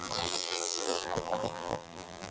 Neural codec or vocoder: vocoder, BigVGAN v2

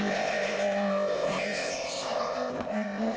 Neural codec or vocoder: codec, ZipCodec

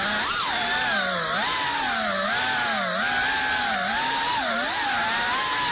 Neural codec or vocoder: none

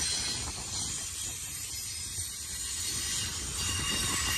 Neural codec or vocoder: none